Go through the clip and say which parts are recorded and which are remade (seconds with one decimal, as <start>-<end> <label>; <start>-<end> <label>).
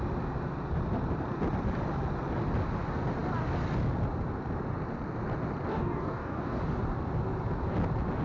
0.0-5.7 recorded; 5.7-6.6 remade; 6.6-8.2 recorded